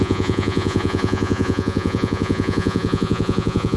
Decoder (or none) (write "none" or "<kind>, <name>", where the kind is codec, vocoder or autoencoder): vocoder, Vocos